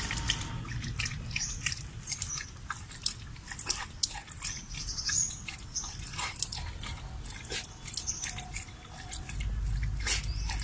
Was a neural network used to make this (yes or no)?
no